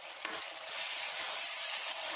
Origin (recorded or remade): remade